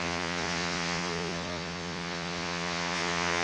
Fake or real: fake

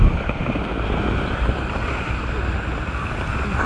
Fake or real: real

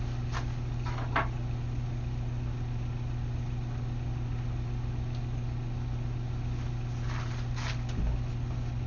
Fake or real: real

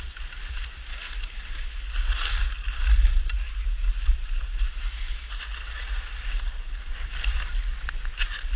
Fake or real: real